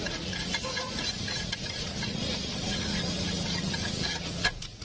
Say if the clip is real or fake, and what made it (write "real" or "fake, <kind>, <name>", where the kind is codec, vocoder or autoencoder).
fake, vocoder, Vocos